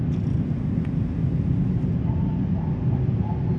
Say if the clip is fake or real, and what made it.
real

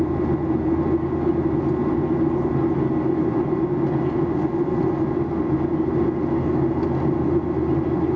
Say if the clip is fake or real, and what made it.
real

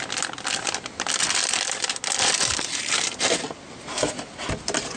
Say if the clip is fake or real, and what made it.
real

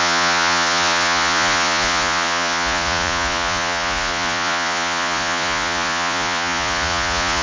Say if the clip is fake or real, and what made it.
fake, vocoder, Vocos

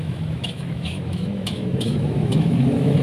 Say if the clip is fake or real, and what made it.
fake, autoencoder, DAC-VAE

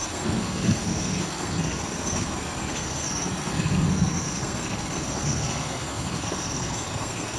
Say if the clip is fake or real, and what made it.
fake, codec, SNAC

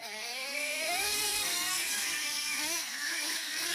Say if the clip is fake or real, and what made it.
fake, codec, SNAC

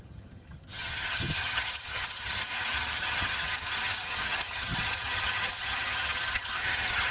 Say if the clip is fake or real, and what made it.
fake, vocoder, HiFi-GAN